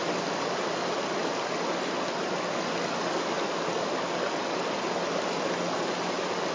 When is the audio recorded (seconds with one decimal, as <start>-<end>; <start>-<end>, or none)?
0.0-6.5